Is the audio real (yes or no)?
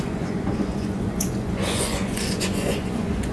no